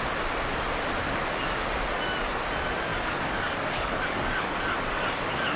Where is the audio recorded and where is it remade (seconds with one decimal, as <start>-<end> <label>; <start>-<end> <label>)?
0.0-2.9 recorded; 2.9-5.6 remade

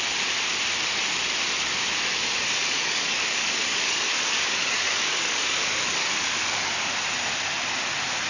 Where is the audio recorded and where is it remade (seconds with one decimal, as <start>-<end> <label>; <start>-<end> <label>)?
0.0-2.2 recorded; 2.2-6.7 remade; 6.7-8.3 recorded

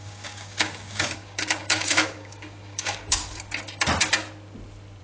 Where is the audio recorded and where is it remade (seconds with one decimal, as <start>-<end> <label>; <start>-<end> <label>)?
0.0-3.2 remade; 3.2-5.0 recorded

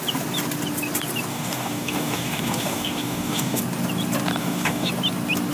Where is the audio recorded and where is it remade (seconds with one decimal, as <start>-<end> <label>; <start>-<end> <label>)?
0.0-1.3 recorded; 1.3-3.6 remade; 3.6-4.4 recorded; 4.4-4.9 remade; 4.9-5.5 recorded